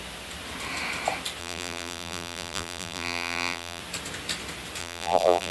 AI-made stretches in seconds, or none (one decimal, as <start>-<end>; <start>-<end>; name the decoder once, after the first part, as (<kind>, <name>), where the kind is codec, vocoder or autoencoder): 1.4-3.8 (vocoder, BigVGAN v2); 4.8-5.5